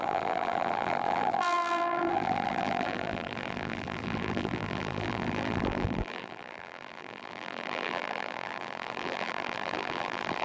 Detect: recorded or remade remade